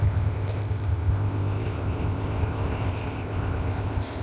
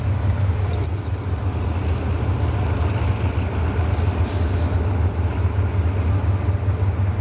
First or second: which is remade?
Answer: first